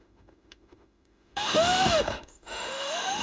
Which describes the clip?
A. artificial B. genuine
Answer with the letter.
A